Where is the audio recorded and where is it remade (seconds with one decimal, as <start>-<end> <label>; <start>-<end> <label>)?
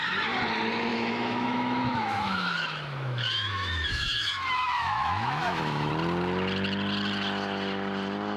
0.0-0.9 recorded; 0.9-5.9 remade; 5.9-8.4 recorded